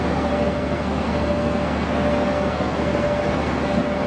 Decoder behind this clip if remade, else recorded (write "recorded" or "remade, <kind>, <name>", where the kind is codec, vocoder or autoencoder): remade, codec, SNAC